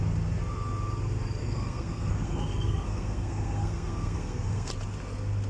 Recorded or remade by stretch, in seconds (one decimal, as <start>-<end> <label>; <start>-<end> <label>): 0.0-1.4 recorded; 1.4-4.7 remade; 4.7-5.5 recorded